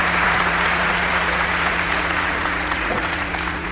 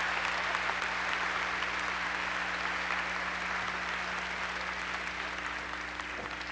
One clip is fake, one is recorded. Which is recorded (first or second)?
second